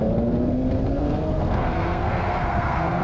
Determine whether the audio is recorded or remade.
remade